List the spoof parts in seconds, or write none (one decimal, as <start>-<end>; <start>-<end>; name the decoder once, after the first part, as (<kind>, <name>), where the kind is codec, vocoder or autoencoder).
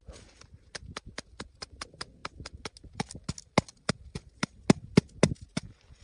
none